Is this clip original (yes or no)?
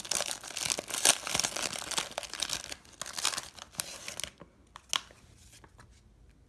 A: yes